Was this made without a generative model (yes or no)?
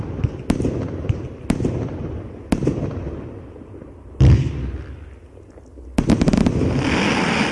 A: yes